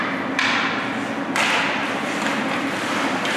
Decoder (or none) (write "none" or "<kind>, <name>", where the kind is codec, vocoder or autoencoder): none